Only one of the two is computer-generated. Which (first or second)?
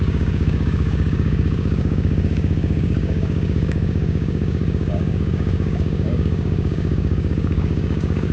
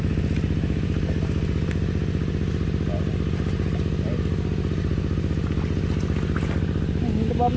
first